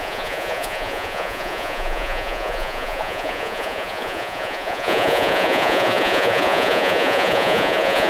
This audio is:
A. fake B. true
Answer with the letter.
A